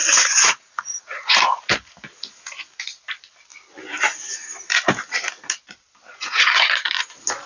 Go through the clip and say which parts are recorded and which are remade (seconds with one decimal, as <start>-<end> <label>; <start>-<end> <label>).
0.0-1.7 remade; 1.7-6.1 recorded; 6.1-7.1 remade; 7.1-7.5 recorded